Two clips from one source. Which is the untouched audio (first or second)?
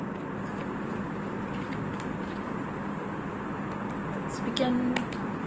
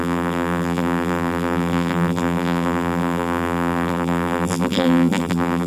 first